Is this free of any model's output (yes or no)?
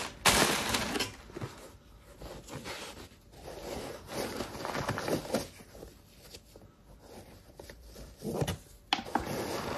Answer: yes